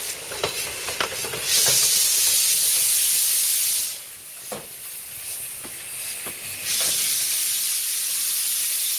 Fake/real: real